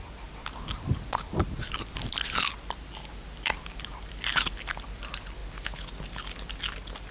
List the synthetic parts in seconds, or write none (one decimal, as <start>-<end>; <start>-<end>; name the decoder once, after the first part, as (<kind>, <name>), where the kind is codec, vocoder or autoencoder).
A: none